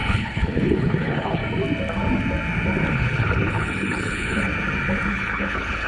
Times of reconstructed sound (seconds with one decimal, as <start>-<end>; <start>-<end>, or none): 0.0-1.4; 2.9-4.5; 5.1-5.9